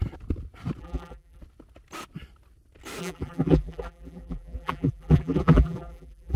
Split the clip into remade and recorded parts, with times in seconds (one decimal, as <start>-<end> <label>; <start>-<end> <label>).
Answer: 0.0-0.8 recorded; 0.8-1.4 remade; 1.4-3.0 recorded; 3.0-6.4 remade